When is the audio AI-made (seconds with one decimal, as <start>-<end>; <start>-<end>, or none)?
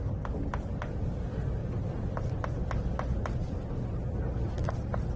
none